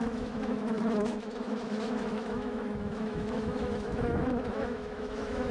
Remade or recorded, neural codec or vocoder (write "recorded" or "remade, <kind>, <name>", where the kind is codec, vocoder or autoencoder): remade, autoencoder, DAC-VAE